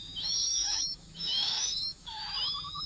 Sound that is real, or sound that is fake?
fake